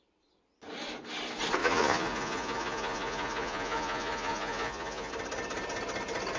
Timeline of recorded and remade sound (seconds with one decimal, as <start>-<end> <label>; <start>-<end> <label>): 0.0-1.6 recorded; 1.6-5.1 remade; 5.1-6.4 recorded